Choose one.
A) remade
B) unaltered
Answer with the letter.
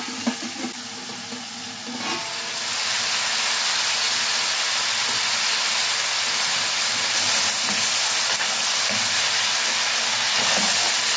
B